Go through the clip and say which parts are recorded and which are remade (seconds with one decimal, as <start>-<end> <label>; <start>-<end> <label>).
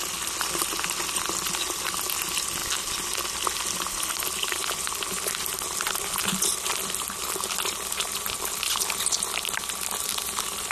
0.0-10.7 recorded